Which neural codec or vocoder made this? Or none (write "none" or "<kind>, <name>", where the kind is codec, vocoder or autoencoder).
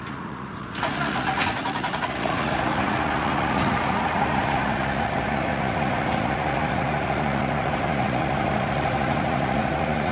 vocoder, Vocos